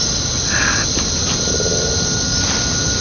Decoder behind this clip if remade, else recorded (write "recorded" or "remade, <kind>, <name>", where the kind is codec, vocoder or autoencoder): recorded